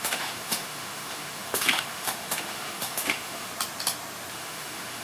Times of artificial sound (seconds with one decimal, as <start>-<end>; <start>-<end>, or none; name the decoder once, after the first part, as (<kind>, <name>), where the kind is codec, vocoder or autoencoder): 0.0-3.5 (autoencoder, DAC-VAE); 4.3-5.0